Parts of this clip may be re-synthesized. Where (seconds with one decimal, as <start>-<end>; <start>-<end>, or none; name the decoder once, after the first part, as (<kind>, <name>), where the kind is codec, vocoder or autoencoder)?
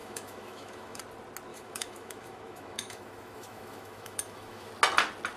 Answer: 0.0-1.0 (autoencoder, DAC-VAE); 1.5-4.7